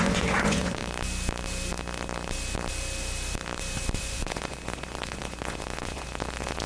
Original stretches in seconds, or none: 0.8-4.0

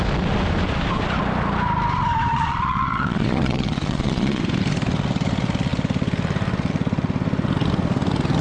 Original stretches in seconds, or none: 0.0-2.3; 4.4-8.4

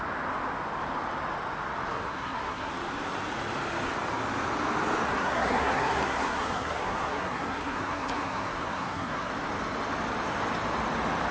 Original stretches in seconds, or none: 0.0-1.9; 2.7-5.1; 9.3-11.3

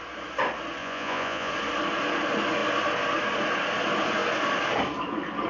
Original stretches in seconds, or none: 0.0-0.8; 1.5-5.5

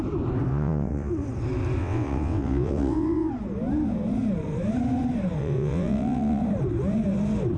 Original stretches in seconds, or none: 0.0-0.5; 1.1-1.8; 3.3-5.4; 6.4-7.6

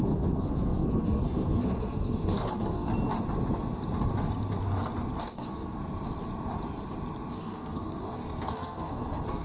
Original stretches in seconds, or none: 2.9-5.2; 5.8-7.3

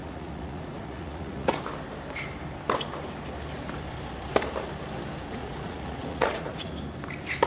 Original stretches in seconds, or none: 1.6-5.4; 6.7-7.5

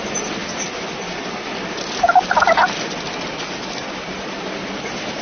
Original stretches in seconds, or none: 0.0-5.2